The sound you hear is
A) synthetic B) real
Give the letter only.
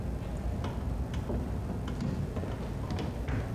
B